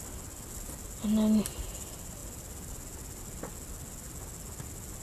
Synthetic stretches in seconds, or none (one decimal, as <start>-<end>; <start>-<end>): none